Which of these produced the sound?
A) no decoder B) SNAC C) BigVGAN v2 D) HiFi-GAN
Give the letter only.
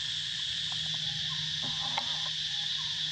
A